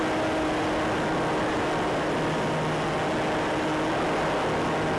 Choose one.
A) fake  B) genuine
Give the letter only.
B